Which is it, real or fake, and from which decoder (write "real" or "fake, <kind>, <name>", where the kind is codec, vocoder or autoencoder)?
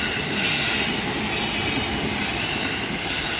real